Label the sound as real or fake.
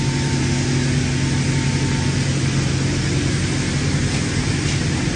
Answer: real